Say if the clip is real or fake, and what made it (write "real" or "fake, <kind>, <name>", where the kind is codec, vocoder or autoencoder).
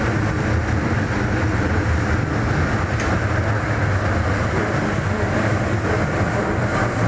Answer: real